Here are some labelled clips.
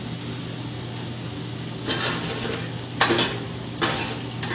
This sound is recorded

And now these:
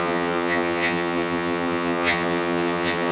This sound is remade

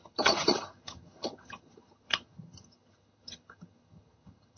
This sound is remade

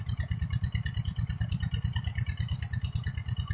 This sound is recorded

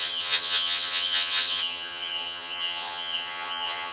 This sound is remade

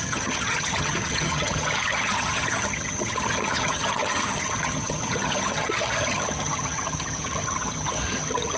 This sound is remade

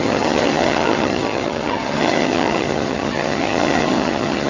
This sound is remade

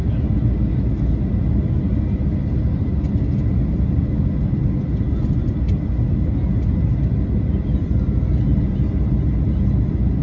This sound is recorded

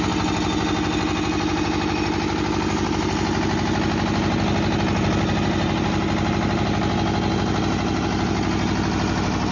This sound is recorded